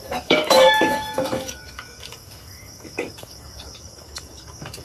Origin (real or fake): fake